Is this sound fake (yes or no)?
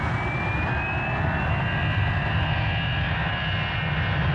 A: no